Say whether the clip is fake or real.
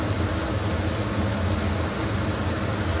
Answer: real